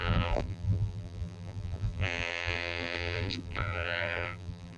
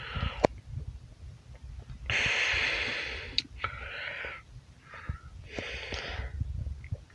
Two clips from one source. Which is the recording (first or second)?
second